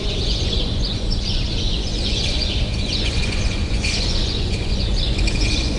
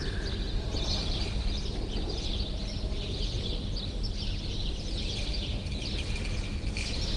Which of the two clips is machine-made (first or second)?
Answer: first